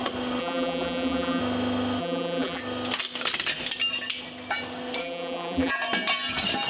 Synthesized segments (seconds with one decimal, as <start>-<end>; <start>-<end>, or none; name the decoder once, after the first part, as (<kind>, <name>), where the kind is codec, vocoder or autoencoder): 0.4-1.4 (vocoder, BigVGAN v2); 2.0-2.6; 5.0-5.7